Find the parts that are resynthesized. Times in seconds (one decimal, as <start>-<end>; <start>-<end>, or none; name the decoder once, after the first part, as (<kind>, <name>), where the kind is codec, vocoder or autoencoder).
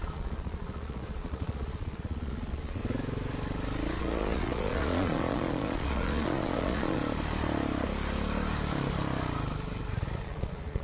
0.0-2.8 (vocoder, Vocos); 4.0-7.0; 10.2-10.8